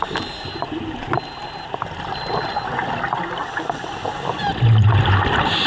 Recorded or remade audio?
recorded